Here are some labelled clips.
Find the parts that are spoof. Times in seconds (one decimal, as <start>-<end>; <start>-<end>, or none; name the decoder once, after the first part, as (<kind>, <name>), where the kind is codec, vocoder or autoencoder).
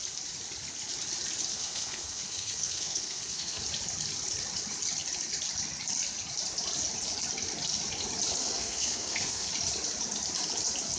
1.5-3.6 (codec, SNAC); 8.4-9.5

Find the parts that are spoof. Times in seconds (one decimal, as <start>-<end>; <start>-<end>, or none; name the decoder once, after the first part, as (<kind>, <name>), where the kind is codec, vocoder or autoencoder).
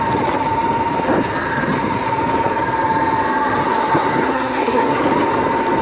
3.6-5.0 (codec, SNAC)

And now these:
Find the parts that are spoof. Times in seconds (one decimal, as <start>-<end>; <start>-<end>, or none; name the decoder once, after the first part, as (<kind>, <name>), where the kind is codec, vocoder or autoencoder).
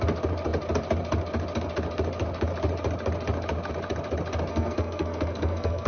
4.5-5.9 (codec, SNAC)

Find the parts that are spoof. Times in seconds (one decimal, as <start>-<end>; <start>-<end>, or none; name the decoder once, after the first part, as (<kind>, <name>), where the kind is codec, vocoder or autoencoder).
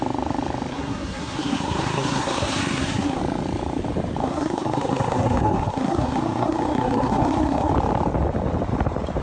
0.7-3.2 (codec, SNAC); 4.2-7.7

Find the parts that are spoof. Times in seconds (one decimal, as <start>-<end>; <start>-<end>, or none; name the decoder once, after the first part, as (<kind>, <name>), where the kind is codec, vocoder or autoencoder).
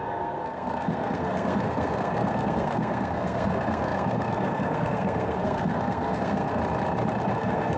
0.0-6.6 (codec, SNAC); 7.3-7.8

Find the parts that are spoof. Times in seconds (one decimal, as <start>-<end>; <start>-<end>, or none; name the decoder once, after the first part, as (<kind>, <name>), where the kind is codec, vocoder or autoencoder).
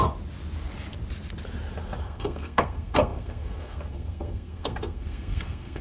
2.0-5.8 (codec, SNAC)